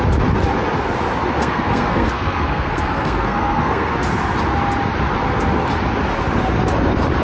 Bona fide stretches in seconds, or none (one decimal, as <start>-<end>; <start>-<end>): 0.0-1.4; 3.9-7.2